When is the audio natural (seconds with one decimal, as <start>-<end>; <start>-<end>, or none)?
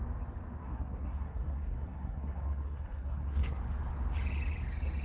0.0-0.6; 3.6-5.0